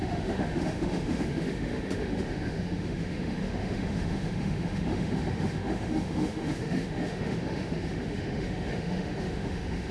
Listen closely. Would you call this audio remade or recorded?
remade